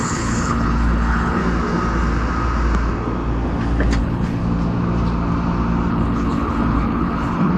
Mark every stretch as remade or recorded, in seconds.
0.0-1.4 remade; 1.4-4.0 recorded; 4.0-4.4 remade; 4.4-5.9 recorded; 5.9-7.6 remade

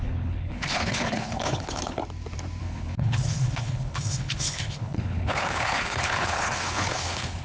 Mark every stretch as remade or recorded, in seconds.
0.0-2.0 remade; 2.0-2.6 recorded; 2.6-7.4 remade